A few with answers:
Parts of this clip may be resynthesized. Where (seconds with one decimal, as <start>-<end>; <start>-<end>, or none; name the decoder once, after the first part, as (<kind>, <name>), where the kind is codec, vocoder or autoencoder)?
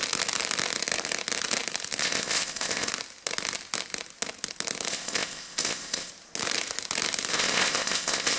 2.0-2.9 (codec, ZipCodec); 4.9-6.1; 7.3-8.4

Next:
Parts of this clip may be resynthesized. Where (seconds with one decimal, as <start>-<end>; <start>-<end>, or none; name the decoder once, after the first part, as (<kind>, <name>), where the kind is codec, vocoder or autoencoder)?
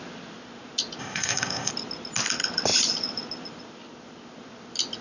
1.0-1.7 (codec, ZipCodec)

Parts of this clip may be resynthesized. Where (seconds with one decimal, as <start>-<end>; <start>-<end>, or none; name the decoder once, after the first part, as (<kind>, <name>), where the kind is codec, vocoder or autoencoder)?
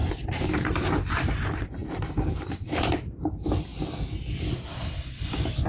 none